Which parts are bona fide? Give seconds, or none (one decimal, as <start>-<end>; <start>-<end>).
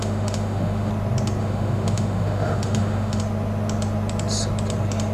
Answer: 0.9-1.4; 3.2-5.1